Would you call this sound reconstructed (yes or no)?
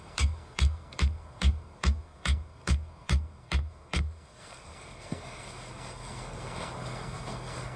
yes